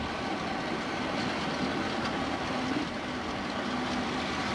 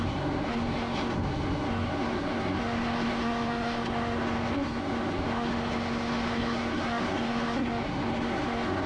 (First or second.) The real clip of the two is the first